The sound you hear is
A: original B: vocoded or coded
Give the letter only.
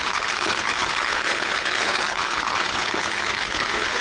B